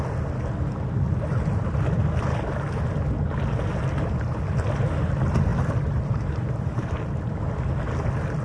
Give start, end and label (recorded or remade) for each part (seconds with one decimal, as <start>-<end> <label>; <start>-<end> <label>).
0.0-5.5 recorded; 5.5-6.9 remade; 6.9-8.4 recorded